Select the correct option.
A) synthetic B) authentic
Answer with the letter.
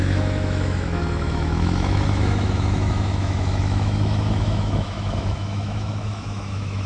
A